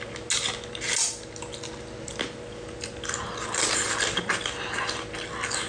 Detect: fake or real real